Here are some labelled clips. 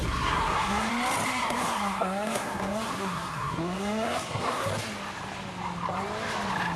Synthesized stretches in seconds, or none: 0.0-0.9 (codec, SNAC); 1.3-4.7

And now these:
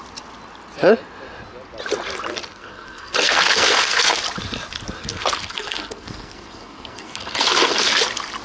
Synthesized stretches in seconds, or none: 2.3-4.2 (codec, SNAC); 5.0-8.0

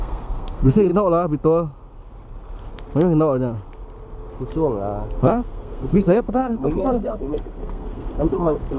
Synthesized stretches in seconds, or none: 0.0-0.9 (codec, SNAC); 5.2-8.8